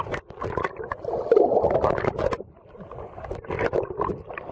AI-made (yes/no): no